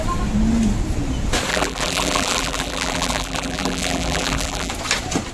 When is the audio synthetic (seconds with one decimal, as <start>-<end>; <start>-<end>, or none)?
1.5-4.7